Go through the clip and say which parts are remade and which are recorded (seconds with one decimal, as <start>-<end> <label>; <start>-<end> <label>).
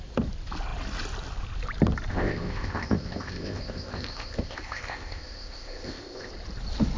0.0-2.1 recorded; 2.1-6.3 remade; 6.3-7.0 recorded